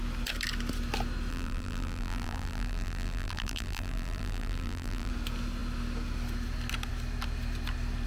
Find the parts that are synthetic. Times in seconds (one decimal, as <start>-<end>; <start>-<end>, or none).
1.3-5.1